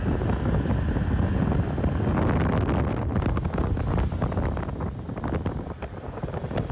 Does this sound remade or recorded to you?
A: recorded